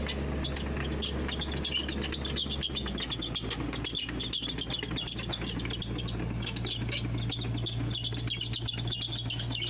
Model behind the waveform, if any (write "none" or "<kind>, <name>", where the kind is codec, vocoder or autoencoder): none